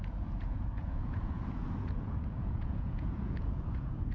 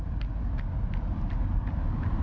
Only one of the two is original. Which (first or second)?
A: second